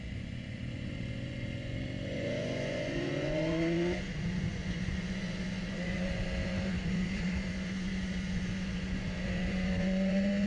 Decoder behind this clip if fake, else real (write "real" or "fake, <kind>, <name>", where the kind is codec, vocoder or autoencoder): fake, vocoder, Vocos